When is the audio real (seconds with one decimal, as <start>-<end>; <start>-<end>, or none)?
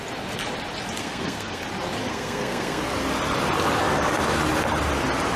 0.0-1.0; 1.6-2.1; 2.8-5.4